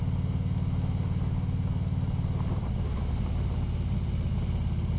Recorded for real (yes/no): yes